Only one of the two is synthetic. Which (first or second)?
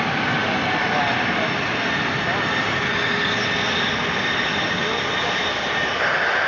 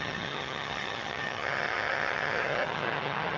second